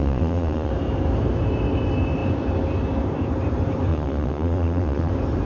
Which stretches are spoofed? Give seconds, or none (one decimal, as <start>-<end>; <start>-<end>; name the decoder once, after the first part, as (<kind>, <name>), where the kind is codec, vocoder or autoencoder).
0.0-0.7 (vocoder, Vocos); 3.9-5.1